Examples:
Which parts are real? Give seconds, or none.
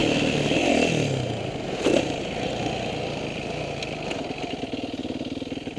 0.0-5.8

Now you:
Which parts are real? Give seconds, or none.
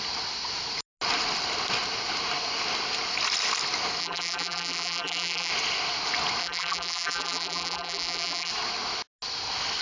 0.0-4.0; 5.5-6.4; 8.5-9.8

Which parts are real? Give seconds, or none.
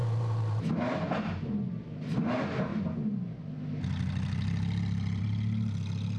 0.7-6.2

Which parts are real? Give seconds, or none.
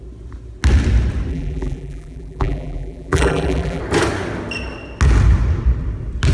0.0-1.3; 3.8-6.3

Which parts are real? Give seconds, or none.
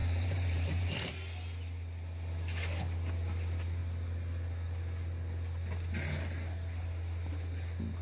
1.1-8.0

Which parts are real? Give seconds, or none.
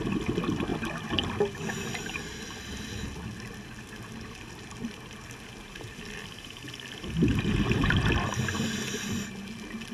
0.0-7.3; 8.0-9.9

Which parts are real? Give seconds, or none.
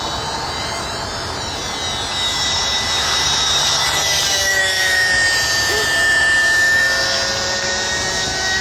1.6-2.2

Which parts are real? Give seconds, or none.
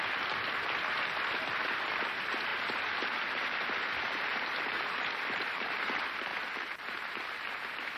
0.0-2.5; 5.8-6.3; 7.1-8.0